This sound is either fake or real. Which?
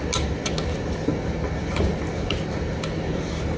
real